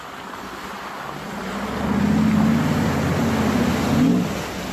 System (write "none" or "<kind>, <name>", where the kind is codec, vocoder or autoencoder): none